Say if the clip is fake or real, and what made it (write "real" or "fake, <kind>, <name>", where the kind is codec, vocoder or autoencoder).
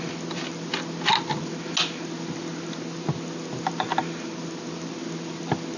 real